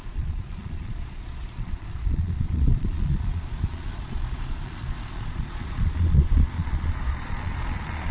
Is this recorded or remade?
remade